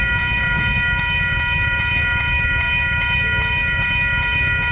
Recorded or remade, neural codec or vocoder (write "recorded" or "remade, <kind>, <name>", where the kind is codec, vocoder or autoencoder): remade, autoencoder, DAC-VAE